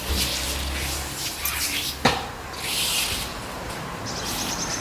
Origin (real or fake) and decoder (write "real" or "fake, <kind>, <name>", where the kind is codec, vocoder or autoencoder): real